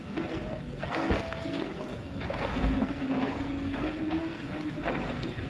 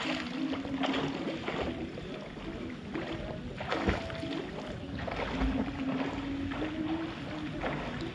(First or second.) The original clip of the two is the second